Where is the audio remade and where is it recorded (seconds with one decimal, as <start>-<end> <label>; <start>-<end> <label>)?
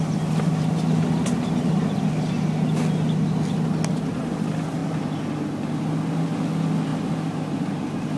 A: 0.0-8.2 recorded